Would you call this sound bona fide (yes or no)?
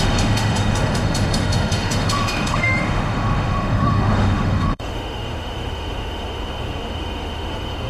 no